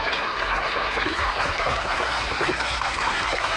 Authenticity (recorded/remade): remade